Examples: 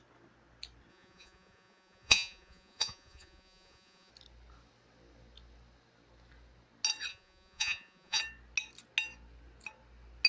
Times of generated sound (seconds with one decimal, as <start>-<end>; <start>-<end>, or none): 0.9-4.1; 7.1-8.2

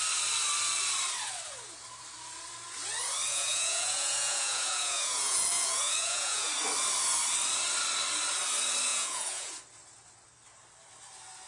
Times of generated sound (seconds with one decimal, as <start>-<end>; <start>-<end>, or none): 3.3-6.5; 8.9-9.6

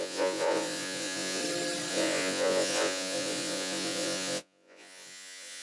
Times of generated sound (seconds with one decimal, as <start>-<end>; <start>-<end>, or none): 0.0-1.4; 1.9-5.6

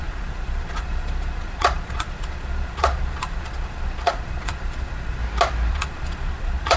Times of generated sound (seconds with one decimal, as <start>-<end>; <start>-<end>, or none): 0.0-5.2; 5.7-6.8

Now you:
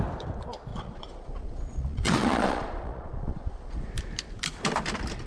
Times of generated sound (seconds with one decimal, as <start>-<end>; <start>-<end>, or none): 0.7-3.9

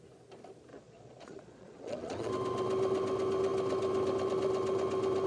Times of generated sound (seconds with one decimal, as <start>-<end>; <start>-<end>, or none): 0.7-2.3

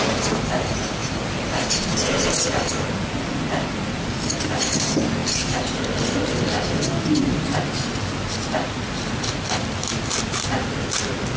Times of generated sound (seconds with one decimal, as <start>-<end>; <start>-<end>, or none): none